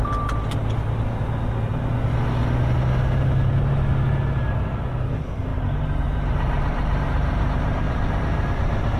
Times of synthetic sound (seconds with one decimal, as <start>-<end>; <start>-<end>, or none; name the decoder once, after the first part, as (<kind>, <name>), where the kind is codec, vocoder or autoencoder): 5.5-9.0 (vocoder, BigVGAN v2)